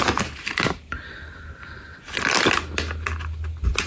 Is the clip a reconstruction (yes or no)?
no